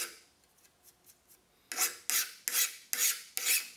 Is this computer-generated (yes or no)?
no